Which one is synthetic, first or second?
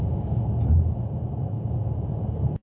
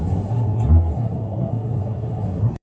second